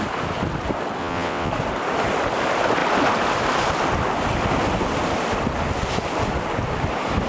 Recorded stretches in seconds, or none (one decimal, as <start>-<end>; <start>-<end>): 0.0-1.0; 1.5-7.3